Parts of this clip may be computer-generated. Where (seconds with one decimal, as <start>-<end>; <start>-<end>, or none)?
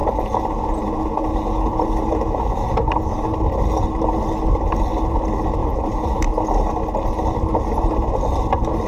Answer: 0.0-3.3; 5.6-6.2